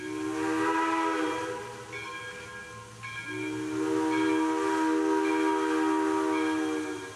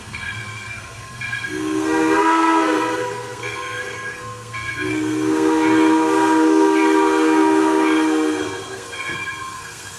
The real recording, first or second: first